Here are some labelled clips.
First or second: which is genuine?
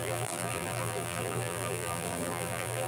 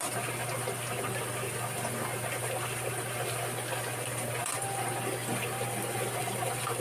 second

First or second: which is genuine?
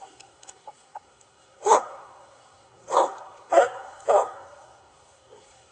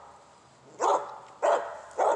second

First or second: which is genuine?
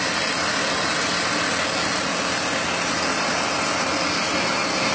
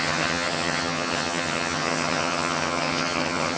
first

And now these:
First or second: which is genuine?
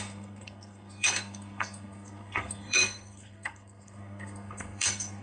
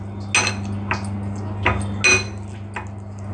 second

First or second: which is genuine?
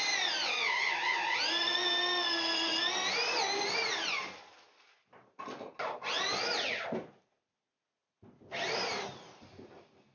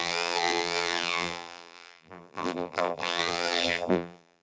first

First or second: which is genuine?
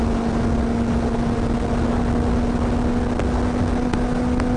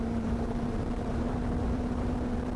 first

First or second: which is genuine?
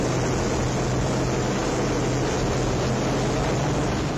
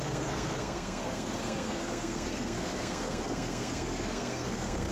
first